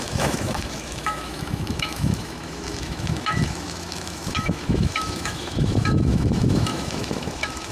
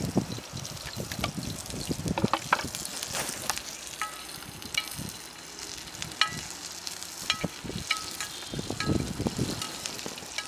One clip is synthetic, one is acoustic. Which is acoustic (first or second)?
second